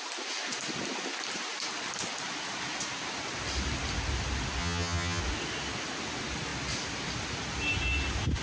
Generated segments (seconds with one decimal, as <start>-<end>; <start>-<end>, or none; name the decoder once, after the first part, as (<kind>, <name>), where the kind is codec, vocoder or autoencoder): 4.6-5.2 (vocoder, HiFi-GAN)